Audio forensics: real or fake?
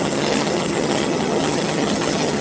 fake